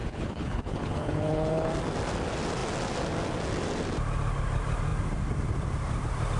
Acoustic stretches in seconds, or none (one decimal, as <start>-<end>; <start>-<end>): 1.7-6.4